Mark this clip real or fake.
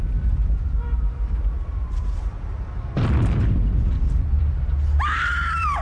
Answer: fake